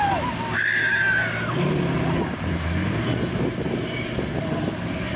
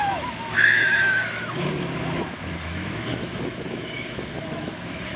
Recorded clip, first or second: first